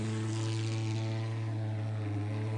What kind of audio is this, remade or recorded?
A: recorded